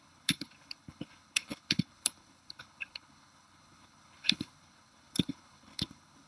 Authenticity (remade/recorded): remade